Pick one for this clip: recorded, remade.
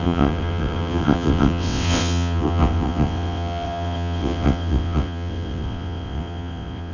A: remade